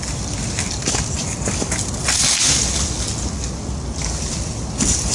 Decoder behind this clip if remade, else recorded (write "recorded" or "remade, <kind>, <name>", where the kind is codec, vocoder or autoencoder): recorded